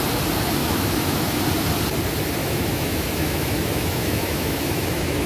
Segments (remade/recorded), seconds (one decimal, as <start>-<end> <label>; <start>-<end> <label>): 0.0-0.6 recorded; 0.6-1.4 remade; 1.4-2.4 recorded; 2.4-5.3 remade